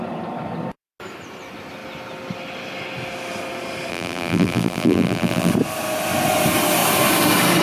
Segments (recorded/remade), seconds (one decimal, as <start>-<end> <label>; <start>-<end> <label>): 0.0-3.9 recorded; 3.9-5.5 remade; 5.5-7.6 recorded